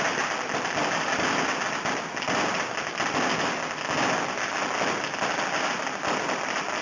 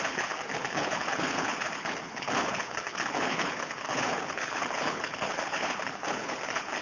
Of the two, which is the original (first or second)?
first